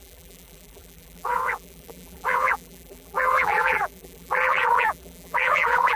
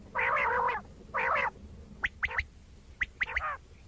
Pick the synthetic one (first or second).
first